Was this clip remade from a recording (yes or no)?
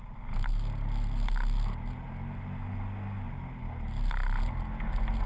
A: no